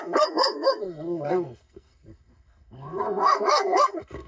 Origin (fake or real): fake